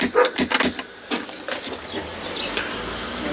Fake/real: real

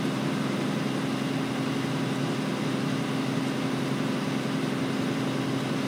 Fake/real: real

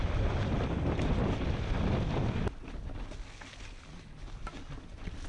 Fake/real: real